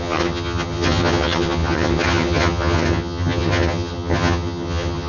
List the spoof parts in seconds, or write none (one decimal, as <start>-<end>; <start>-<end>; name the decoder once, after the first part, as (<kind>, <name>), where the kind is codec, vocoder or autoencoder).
0.0-5.1 (vocoder, HiFi-GAN)